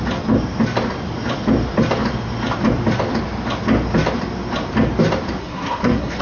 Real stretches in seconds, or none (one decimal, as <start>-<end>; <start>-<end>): 0.0-5.4